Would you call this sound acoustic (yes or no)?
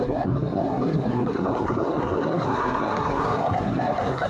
no